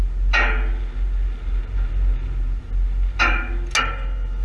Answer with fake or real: real